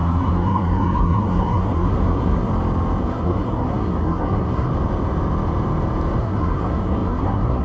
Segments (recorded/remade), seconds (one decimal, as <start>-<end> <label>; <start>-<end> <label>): 0.0-2.5 remade; 2.5-3.0 recorded; 3.0-4.7 remade; 4.7-6.2 recorded; 6.2-7.6 remade

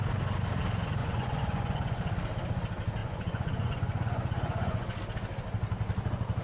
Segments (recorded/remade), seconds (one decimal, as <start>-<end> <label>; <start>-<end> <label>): 0.0-1.0 recorded; 1.0-2.0 remade; 2.0-3.0 recorded; 3.0-5.0 remade; 5.0-6.4 recorded

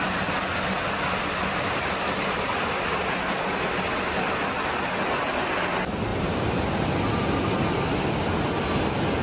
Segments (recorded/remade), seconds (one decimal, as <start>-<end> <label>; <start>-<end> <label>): 0.0-6.1 recorded; 6.1-7.9 remade; 7.9-9.2 recorded

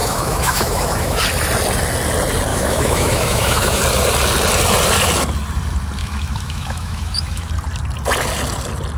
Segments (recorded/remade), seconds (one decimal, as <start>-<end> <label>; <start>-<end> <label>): 0.0-1.2 remade; 1.2-2.5 recorded; 2.5-3.8 remade; 3.8-6.0 recorded; 6.0-7.5 remade; 7.5-9.0 recorded

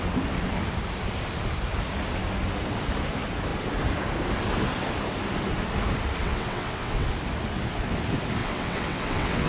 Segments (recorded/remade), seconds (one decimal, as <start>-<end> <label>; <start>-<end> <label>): 0.0-6.2 recorded; 6.2-7.1 remade; 7.1-8.4 recorded; 8.4-9.5 remade

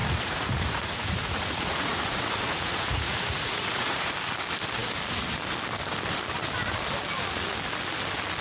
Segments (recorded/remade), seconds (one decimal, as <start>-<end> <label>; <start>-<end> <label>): 0.0-4.1 remade; 4.1-8.4 recorded

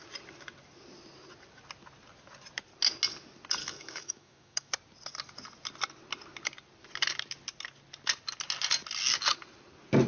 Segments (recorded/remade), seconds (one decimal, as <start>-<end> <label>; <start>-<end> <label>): 0.0-3.6 recorded; 3.6-4.7 remade; 4.7-10.1 recorded